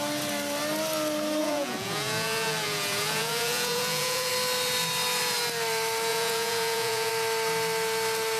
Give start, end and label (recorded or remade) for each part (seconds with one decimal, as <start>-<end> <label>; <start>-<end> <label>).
0.0-1.4 recorded; 1.4-4.3 remade; 4.3-6.1 recorded; 6.1-7.1 remade; 7.1-8.4 recorded